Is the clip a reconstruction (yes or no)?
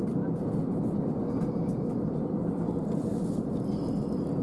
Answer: no